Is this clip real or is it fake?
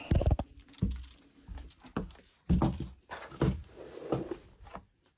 real